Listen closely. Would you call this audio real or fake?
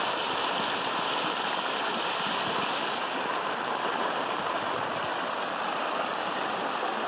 real